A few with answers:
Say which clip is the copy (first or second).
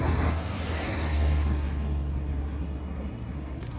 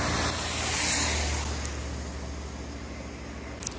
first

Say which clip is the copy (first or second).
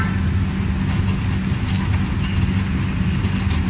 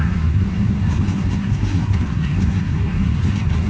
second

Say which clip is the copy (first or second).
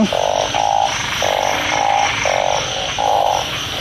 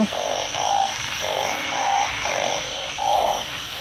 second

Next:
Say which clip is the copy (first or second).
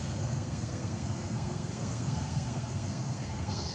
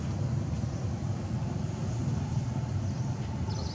first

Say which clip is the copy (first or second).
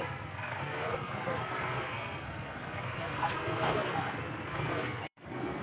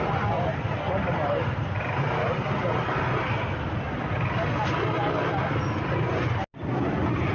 first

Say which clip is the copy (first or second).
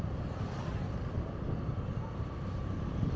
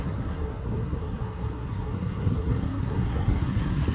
second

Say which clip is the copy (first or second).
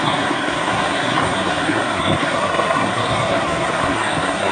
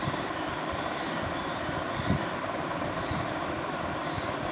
first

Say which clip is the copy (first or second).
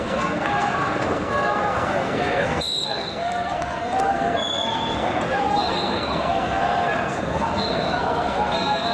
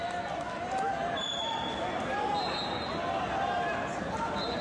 first